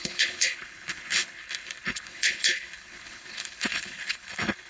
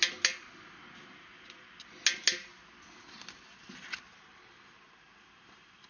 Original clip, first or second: second